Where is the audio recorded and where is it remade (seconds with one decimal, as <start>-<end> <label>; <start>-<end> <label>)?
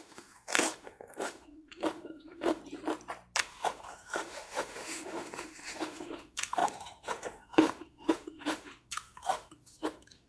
0.0-2.6 remade; 2.6-3.4 recorded; 3.4-10.3 remade